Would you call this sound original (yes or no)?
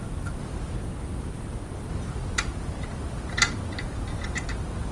yes